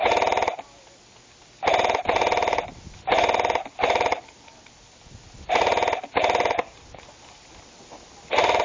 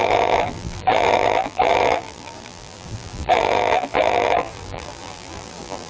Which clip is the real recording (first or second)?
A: first